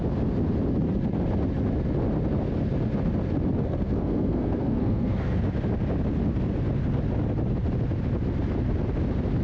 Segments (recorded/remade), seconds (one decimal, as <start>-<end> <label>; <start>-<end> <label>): 0.0-3.6 recorded; 3.6-5.4 remade; 5.4-9.4 recorded